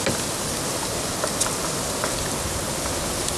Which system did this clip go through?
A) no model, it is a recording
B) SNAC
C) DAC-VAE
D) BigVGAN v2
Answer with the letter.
A